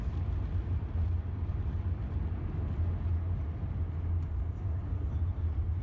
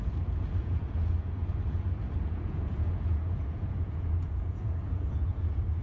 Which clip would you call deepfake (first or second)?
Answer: second